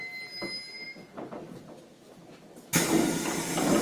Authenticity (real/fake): real